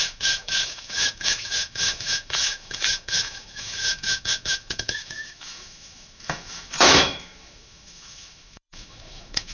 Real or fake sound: fake